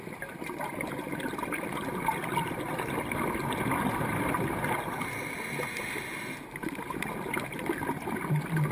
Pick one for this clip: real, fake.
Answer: real